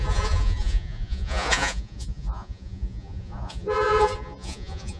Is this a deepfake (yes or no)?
yes